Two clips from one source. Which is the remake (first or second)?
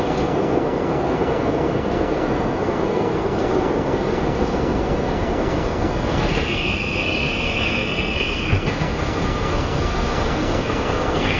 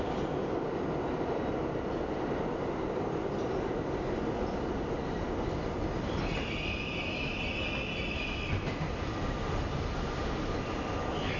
first